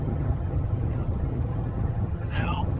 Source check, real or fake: fake